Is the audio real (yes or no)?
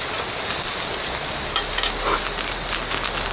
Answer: yes